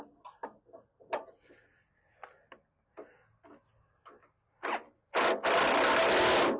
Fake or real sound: real